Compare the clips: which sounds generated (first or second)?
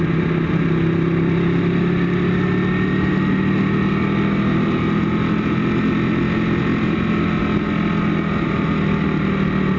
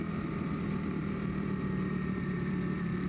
second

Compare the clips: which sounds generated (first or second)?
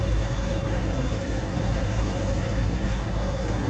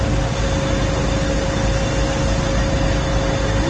first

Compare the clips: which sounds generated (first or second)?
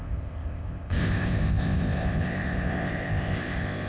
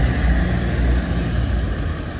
first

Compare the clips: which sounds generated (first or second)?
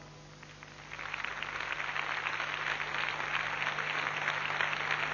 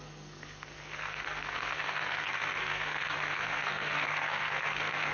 second